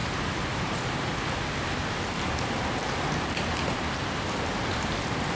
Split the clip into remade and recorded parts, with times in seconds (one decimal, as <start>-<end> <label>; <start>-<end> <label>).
0.0-1.1 remade; 1.1-1.8 recorded; 1.8-3.6 remade; 3.6-4.7 recorded; 4.7-5.3 remade